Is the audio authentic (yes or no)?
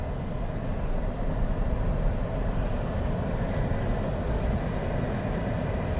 yes